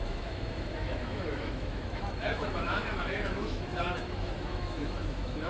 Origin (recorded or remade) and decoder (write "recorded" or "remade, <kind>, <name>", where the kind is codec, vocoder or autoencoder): remade, autoencoder, DAC-VAE